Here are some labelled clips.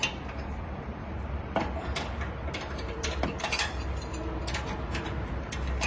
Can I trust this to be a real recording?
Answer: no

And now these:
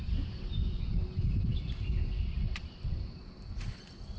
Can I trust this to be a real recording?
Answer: yes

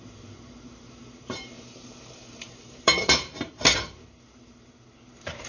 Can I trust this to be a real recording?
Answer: no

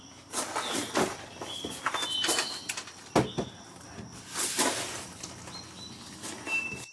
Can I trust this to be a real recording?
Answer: yes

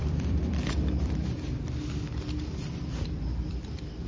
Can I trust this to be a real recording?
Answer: no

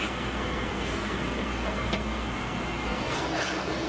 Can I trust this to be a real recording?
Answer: no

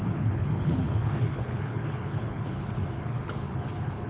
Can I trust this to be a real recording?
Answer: no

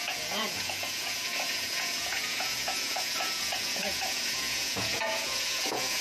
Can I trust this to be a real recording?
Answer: no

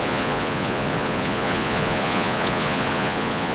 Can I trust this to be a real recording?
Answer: no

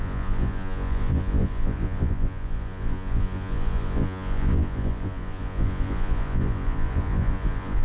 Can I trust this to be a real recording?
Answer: no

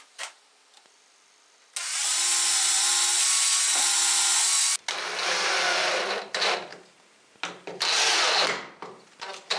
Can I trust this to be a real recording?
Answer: yes